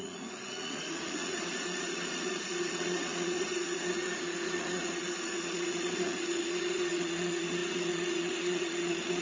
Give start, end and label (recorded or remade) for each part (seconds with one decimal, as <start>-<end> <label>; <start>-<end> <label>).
0.0-9.2 remade